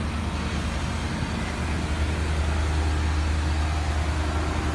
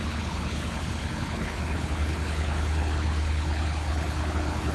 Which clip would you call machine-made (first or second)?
second